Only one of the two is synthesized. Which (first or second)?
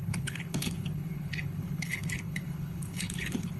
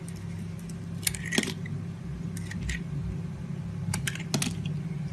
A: first